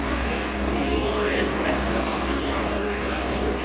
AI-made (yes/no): yes